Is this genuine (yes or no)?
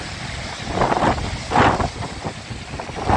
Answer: yes